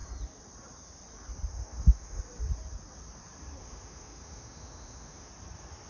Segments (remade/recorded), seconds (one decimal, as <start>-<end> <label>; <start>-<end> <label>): 0.0-1.5 recorded; 1.5-2.2 remade; 2.2-3.6 recorded; 3.6-5.3 remade; 5.3-5.9 recorded